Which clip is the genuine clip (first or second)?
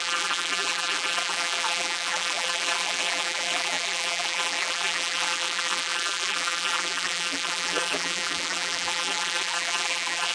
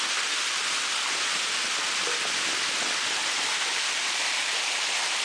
second